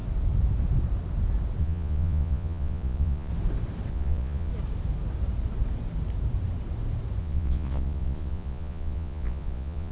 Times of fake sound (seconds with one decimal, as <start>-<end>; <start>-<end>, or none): 1.6-3.3; 3.9-4.5; 7.2-9.9